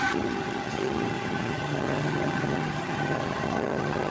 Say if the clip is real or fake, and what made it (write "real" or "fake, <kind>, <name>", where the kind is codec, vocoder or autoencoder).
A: fake, vocoder, HiFi-GAN